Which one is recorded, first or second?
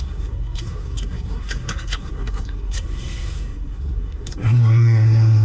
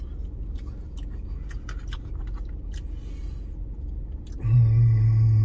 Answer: second